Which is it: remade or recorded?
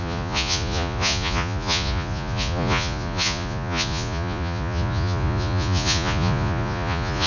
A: remade